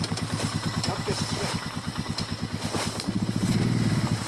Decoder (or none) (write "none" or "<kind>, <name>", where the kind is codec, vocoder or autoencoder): vocoder, BigVGAN v2